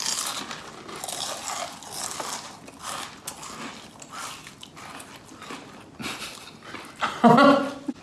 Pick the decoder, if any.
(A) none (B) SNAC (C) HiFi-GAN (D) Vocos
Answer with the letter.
A